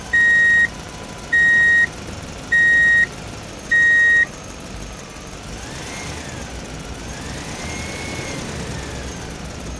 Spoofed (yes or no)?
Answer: no